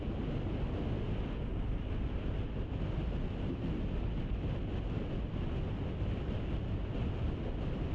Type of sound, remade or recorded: recorded